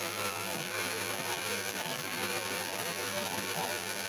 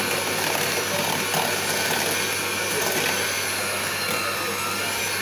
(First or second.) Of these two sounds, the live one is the second